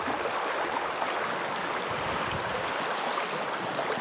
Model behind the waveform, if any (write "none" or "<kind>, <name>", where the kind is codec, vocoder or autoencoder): none